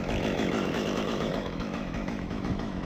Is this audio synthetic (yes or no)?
yes